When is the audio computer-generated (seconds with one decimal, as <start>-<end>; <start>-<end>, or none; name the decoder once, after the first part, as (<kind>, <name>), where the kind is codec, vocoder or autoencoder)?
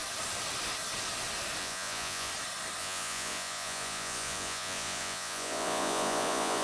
1.6-2.3 (vocoder, Vocos); 2.8-6.6